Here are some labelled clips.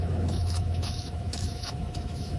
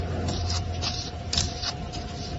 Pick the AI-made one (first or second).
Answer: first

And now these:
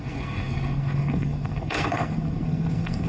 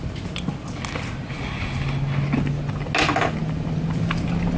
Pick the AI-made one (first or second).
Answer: first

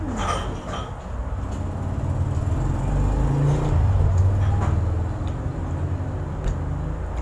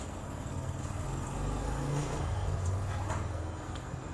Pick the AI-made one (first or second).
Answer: second